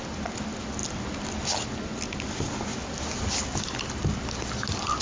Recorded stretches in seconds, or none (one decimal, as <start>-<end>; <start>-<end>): 0.0-5.0